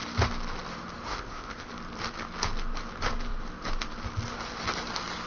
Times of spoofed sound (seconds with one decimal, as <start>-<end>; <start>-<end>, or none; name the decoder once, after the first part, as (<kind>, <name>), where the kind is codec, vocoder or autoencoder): 1.1-1.7 (codec, ZipCodec)